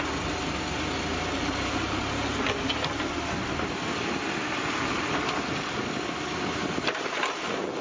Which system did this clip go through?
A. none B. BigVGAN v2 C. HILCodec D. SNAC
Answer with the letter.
A